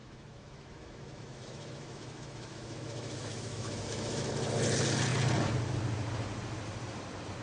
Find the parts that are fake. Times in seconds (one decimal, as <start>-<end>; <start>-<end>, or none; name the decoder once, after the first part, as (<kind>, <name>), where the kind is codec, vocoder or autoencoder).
0.0-4.3 (autoencoder, DAC-VAE)